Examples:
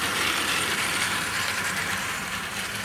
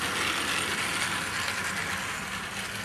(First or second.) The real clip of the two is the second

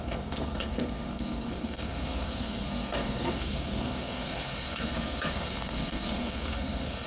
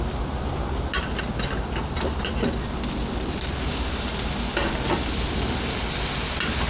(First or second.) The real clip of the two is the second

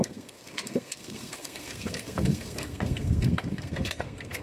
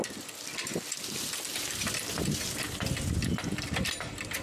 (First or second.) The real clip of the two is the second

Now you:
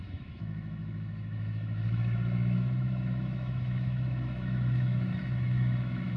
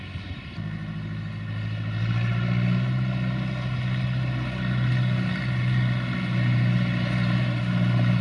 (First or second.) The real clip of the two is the second